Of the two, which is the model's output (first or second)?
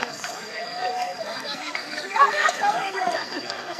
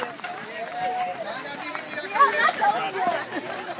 first